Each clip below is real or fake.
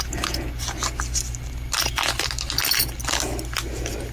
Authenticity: real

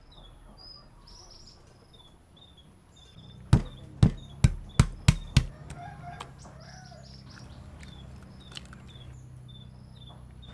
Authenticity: real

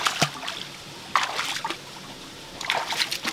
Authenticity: real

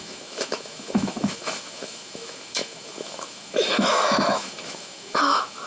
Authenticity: fake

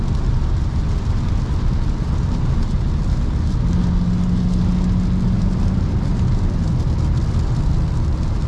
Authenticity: real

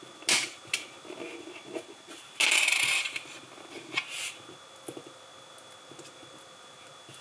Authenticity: real